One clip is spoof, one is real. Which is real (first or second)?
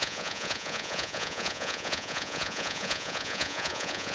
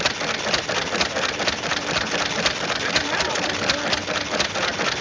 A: second